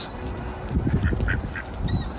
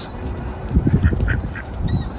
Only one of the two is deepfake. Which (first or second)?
second